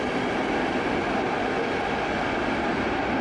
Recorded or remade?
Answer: recorded